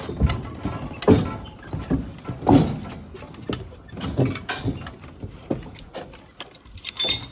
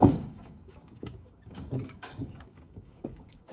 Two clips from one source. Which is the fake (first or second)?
second